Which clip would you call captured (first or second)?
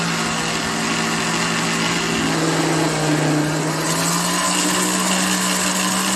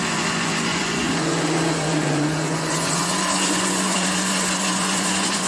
first